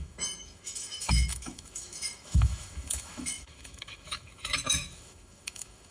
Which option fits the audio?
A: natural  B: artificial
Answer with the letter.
B